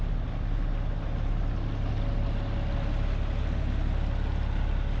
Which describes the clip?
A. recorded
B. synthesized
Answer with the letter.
A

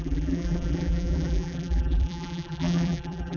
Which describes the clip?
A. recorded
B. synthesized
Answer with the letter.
B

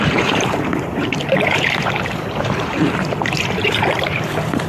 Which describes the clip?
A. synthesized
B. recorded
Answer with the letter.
A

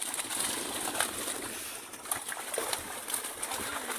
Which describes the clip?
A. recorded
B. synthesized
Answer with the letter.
A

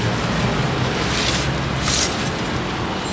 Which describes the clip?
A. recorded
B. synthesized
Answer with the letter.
A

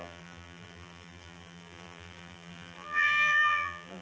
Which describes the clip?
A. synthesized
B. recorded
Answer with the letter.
A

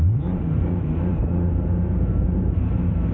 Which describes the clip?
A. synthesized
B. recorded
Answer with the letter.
A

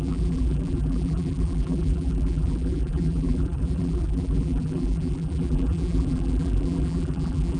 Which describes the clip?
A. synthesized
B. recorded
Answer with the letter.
A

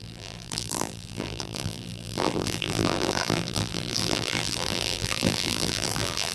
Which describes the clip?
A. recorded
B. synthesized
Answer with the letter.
B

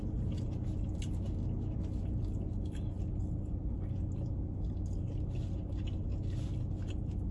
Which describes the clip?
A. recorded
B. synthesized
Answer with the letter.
A